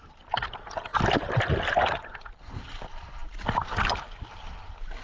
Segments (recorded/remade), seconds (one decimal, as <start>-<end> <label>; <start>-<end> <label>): 0.0-0.9 recorded; 0.9-1.5 remade; 1.5-5.0 recorded